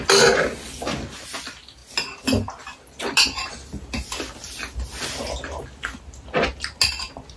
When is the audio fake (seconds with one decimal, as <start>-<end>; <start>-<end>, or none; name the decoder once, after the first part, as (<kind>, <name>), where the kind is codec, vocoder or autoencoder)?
none